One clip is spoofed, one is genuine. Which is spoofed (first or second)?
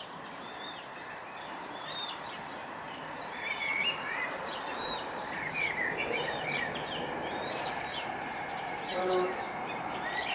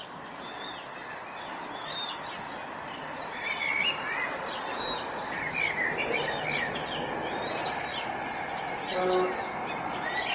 first